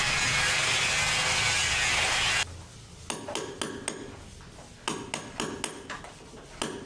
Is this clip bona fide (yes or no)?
yes